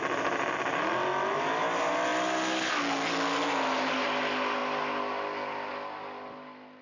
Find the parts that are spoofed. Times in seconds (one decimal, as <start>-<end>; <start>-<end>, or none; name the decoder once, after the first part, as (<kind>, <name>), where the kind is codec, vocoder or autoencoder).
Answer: none